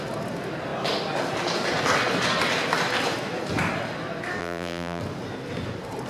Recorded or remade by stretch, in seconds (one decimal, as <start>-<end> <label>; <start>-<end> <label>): 0.0-4.4 recorded; 4.4-5.0 remade; 5.0-6.1 recorded